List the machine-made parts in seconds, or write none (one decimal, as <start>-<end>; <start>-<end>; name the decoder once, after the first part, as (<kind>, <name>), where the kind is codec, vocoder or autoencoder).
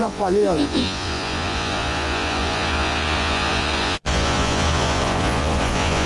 0.0-6.1 (vocoder, Vocos)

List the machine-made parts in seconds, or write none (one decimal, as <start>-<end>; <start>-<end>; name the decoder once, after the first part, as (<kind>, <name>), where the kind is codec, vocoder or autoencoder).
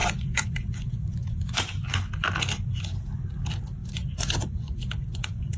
0.0-1.6 (vocoder, Vocos); 3.8-5.6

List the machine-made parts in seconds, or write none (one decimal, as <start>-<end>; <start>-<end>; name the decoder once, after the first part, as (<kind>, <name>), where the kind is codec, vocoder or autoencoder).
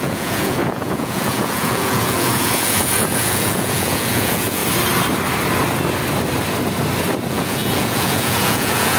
0.0-4.6 (vocoder, Vocos); 7.3-9.0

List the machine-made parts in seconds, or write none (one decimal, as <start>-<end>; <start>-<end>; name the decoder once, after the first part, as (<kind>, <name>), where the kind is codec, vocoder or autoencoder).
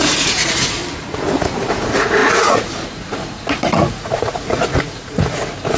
0.0-0.8 (vocoder, Vocos); 1.6-5.8